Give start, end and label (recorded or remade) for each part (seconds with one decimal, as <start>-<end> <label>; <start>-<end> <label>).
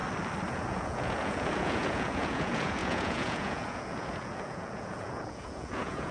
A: 0.0-0.5 recorded; 0.5-6.1 remade